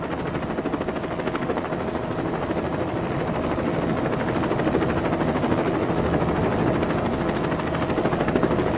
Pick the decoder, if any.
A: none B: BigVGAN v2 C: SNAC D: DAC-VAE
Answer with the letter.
A